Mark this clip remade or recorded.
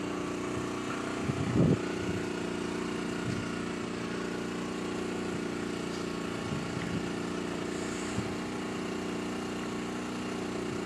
recorded